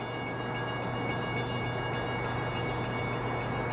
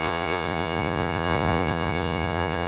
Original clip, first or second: first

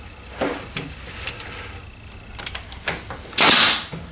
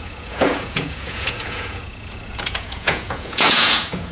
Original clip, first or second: first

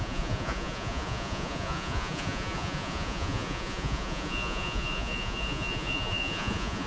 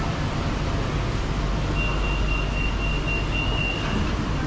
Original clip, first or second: second